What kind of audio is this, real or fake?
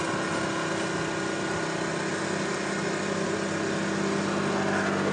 real